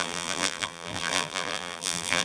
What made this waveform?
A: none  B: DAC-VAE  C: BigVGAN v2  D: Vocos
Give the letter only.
C